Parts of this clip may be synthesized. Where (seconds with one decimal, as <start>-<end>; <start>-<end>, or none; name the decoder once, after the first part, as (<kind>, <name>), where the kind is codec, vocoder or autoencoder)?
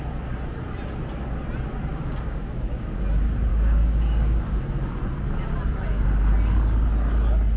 1.9-3.0 (codec, DAC); 3.5-4.6